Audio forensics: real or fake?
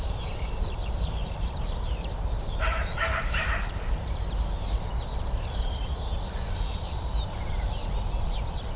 fake